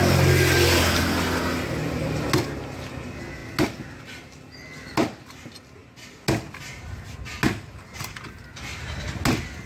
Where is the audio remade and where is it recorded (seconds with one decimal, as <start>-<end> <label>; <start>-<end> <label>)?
0.0-9.7 recorded